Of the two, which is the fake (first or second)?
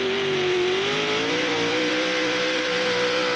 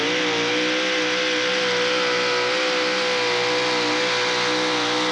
first